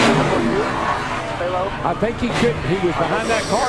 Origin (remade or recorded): recorded